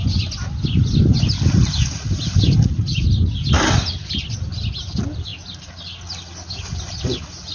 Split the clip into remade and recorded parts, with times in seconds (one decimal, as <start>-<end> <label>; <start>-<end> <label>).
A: 0.0-7.5 recorded